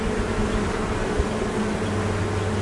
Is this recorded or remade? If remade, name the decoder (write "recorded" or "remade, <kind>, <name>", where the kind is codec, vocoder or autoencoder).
recorded